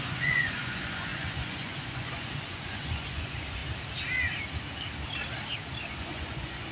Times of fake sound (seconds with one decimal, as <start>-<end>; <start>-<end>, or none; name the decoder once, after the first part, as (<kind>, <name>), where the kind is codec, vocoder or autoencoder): 0.0-3.6 (vocoder, Vocos); 5.9-6.7